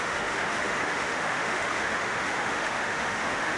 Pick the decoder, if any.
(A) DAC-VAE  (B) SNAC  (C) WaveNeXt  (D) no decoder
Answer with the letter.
A